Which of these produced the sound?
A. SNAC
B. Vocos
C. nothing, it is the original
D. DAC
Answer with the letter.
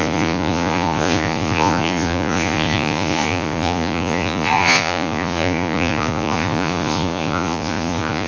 B